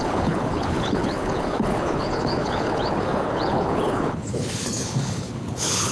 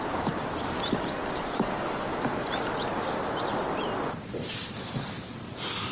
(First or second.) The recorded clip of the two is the second